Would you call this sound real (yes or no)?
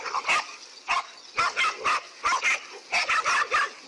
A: yes